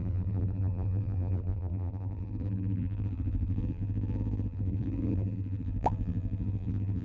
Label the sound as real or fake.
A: fake